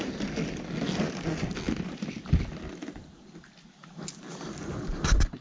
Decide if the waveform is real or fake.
real